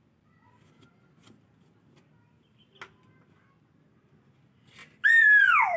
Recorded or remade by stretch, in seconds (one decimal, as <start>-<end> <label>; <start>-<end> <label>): 0.0-5.8 recorded